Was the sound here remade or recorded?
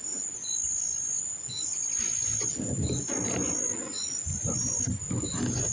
recorded